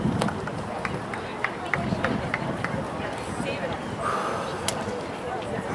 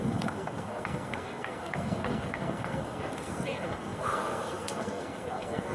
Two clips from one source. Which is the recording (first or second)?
first